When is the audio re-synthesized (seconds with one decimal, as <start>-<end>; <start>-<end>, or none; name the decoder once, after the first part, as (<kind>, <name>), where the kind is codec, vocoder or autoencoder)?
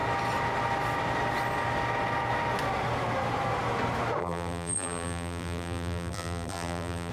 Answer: 4.2-7.1 (vocoder, BigVGAN v2)